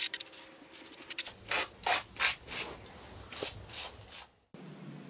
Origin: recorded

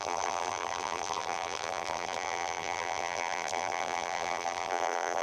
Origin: remade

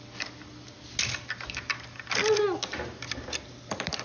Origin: recorded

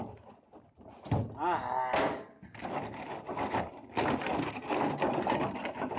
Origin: recorded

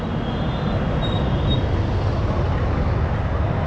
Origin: recorded